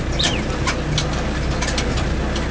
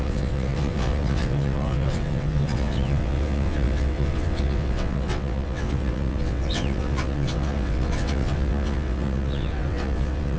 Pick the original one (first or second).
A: first